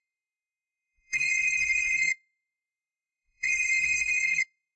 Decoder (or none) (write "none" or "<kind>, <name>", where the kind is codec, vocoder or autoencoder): codec, SNAC